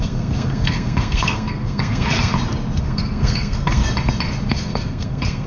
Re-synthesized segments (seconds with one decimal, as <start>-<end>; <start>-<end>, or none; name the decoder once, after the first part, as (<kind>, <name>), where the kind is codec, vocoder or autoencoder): 0.0-2.3 (codec, SNAC); 2.8-3.8; 4.5-5.5